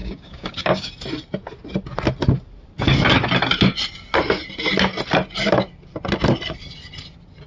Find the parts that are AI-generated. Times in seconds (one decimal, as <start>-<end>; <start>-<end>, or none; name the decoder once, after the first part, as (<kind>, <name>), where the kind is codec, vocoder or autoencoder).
0.0-0.9 (codec, DAC)